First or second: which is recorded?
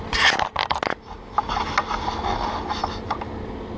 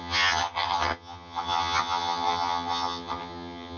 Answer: first